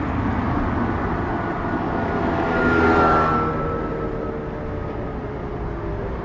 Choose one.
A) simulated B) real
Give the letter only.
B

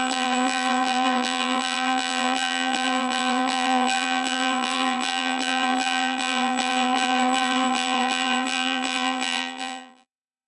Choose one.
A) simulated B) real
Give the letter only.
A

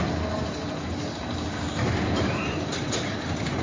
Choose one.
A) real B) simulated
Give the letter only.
A